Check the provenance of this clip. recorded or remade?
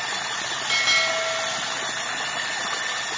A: recorded